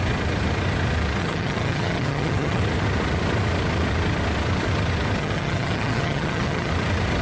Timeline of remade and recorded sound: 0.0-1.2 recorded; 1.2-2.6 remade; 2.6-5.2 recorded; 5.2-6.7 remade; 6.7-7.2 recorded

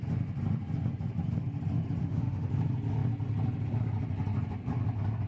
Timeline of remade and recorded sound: 0.0-2.0 recorded; 2.0-2.5 remade; 2.5-5.3 recorded

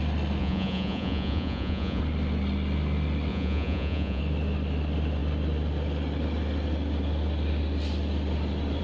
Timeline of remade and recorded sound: 0.0-0.4 recorded; 0.4-2.0 remade; 2.0-3.3 recorded; 3.3-4.2 remade; 4.2-8.8 recorded

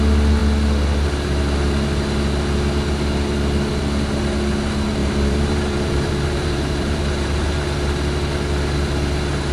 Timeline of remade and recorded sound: 0.0-5.0 recorded; 5.0-7.6 remade; 7.6-9.5 recorded

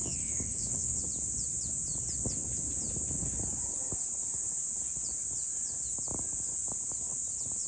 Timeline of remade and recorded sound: 0.0-1.0 remade; 1.0-7.7 recorded

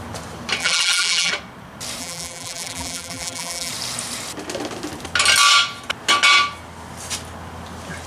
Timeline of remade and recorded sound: 0.0-0.6 recorded; 0.6-1.3 remade; 1.3-2.0 recorded; 2.0-3.7 remade; 3.7-8.1 recorded

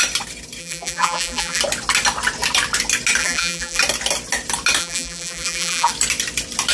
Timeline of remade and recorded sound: 0.0-0.6 recorded; 0.6-1.6 remade; 1.6-3.2 recorded; 3.2-3.8 remade; 3.8-4.8 recorded; 4.8-5.9 remade; 5.9-6.7 recorded

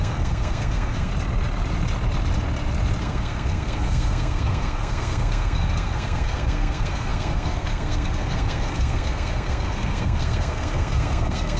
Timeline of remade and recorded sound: 0.0-1.1 remade; 1.1-3.0 recorded; 3.0-11.6 remade